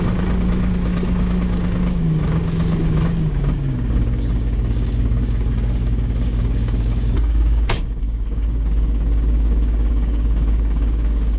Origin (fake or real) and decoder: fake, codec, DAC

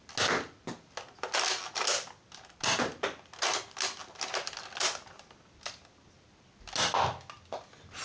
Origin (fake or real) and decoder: real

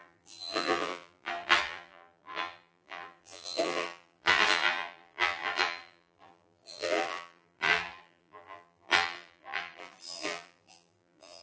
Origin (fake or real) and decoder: fake, vocoder, BigVGAN v2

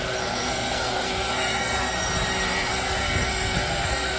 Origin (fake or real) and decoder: fake, codec, SNAC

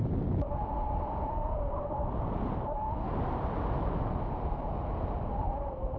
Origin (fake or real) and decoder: real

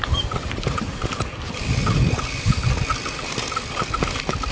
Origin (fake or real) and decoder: real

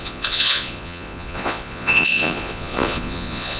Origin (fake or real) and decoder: fake, vocoder, Vocos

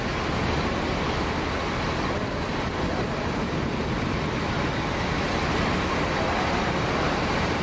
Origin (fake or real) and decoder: real